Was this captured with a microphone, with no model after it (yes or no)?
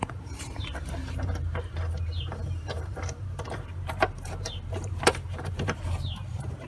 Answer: no